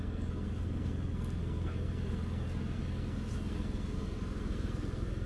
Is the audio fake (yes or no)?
yes